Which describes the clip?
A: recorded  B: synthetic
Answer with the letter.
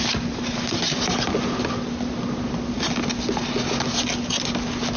A